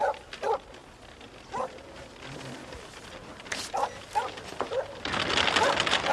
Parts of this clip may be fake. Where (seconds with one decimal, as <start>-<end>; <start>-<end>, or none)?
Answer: none